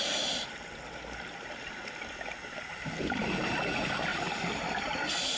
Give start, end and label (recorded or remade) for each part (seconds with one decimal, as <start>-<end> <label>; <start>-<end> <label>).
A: 0.0-4.1 recorded; 4.1-4.8 remade; 4.8-5.4 recorded